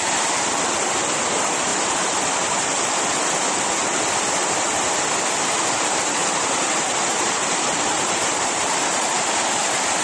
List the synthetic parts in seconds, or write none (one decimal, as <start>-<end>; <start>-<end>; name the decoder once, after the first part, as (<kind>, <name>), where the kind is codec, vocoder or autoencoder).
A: 1.7-3.0 (vocoder, BigVGAN v2); 6.2-9.3